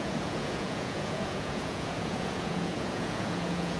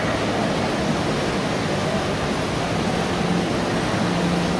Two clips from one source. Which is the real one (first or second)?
second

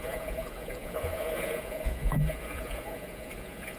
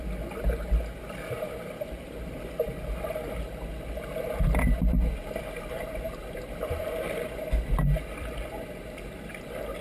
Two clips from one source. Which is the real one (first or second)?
second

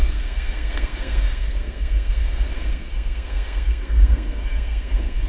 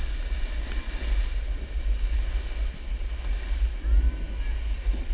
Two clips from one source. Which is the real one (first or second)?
second